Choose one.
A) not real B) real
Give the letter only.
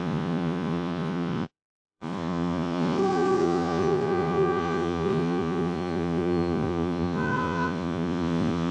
A